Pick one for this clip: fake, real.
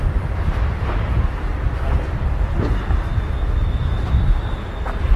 real